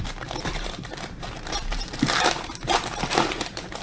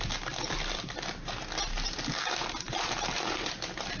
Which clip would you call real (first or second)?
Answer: second